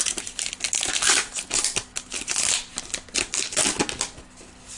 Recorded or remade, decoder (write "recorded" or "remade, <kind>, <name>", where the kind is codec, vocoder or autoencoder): recorded